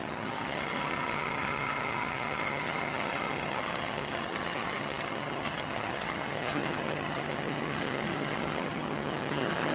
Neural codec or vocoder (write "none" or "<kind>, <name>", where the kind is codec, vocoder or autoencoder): vocoder, HiFi-GAN